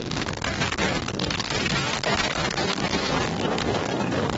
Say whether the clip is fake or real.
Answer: fake